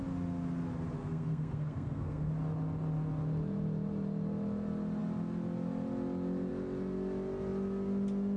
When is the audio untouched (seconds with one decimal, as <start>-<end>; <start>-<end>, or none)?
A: 0.0-1.0; 2.3-8.4